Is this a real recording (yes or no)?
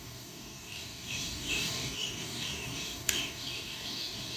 no